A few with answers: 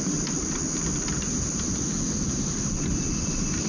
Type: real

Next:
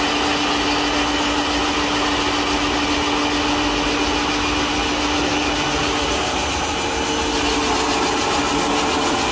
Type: real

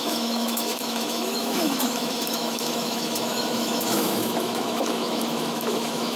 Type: fake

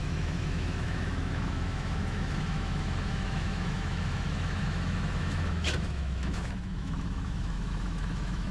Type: fake